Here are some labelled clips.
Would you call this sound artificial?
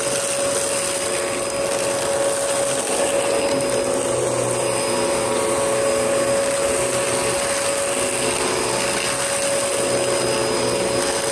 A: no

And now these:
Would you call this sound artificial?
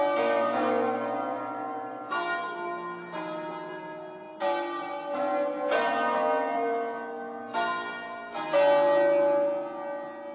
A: no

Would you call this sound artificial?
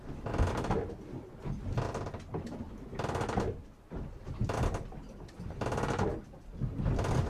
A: no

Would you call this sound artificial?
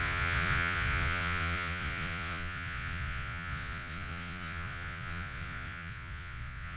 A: yes